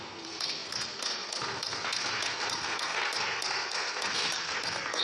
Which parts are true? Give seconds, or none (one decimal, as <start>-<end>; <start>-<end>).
none